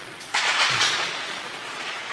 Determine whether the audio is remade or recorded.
remade